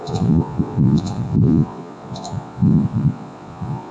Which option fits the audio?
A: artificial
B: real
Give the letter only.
A